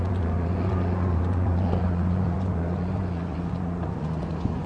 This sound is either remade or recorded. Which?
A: remade